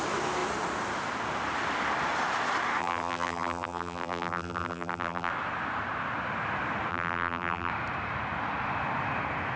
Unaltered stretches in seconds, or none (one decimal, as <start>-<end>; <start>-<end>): 0.0-2.8; 5.3-6.9; 7.7-9.6